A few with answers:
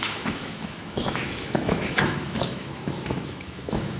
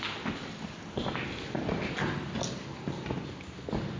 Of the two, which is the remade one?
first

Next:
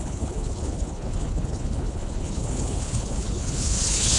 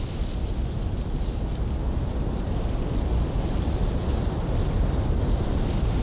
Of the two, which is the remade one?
first